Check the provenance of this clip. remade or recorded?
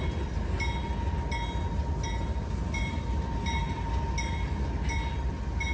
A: recorded